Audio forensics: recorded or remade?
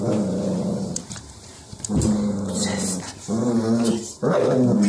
remade